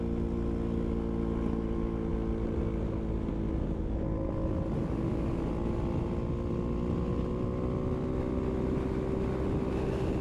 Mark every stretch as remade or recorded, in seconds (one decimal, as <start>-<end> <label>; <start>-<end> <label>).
0.0-10.2 recorded